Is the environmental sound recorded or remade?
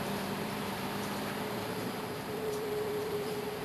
remade